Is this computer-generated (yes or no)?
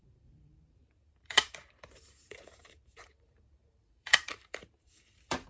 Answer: yes